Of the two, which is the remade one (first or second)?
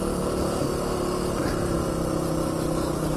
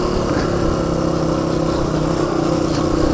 second